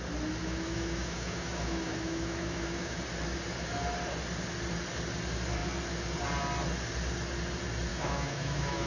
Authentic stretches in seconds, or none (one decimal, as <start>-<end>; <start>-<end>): 0.0-0.4; 3.0-7.9